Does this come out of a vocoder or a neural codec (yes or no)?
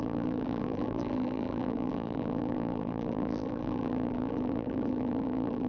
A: yes